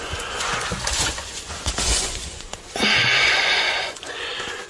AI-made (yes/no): yes